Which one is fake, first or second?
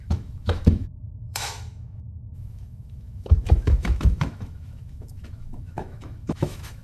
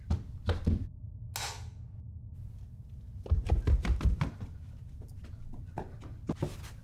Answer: first